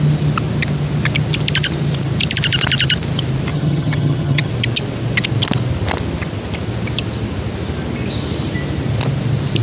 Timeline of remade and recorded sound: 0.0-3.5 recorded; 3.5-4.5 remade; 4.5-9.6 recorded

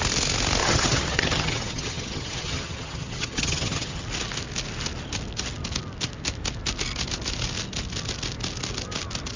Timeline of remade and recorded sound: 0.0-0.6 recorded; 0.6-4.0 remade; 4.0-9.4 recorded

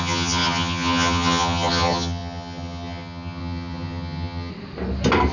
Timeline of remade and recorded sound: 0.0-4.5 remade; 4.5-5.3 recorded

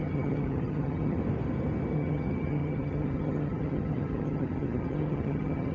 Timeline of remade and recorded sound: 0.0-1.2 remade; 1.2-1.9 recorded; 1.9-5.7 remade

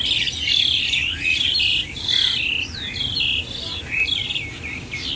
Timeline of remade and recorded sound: 0.0-5.2 recorded

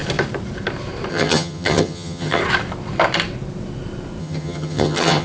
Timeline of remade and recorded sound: 0.0-1.1 recorded; 1.1-2.4 remade; 2.4-4.2 recorded; 4.2-5.2 remade

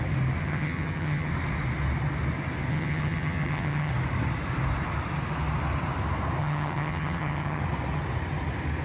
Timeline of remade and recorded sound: 0.0-0.4 recorded; 0.4-1.3 remade; 1.3-2.7 recorded; 2.7-3.9 remade; 3.9-6.4 recorded; 6.4-7.6 remade; 7.6-8.8 recorded

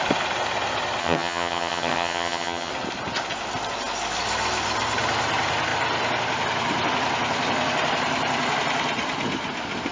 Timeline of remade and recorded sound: 0.0-1.0 recorded; 1.0-2.7 remade; 2.7-9.9 recorded